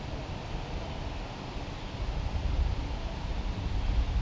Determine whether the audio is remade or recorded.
recorded